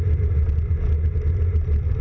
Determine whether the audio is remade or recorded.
recorded